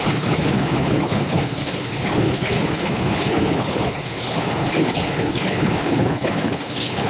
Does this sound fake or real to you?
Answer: fake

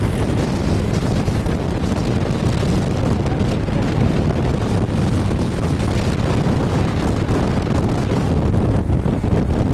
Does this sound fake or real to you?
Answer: real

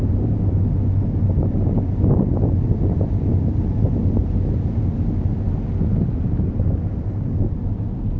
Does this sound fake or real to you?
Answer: real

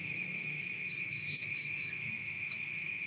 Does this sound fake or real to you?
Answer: fake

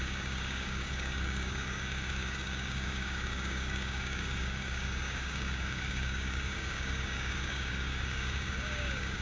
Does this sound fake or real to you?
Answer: fake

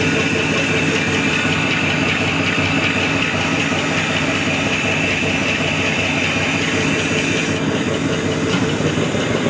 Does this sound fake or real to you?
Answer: real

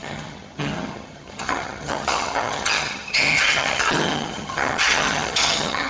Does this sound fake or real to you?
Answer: fake